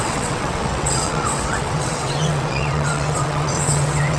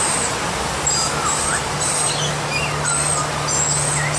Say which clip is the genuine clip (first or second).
second